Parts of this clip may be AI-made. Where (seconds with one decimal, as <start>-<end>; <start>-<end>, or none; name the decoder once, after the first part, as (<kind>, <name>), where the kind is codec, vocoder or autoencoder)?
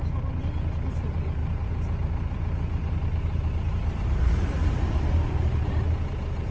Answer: 0.0-6.5 (vocoder, BigVGAN v2)